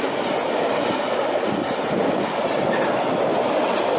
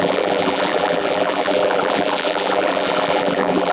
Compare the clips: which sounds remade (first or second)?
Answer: second